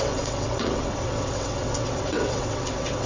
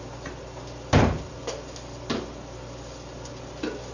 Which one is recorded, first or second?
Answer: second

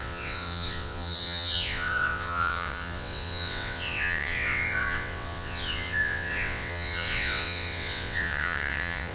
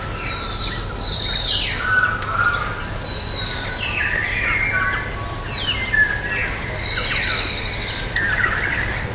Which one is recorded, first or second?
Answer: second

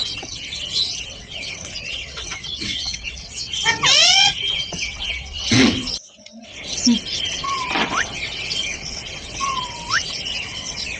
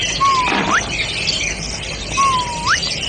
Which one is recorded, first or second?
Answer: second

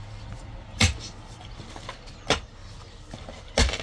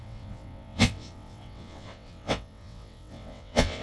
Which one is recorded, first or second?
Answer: first